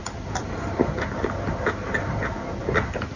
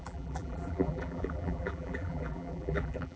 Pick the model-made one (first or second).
second